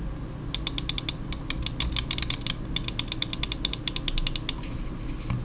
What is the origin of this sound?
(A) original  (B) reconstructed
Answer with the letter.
A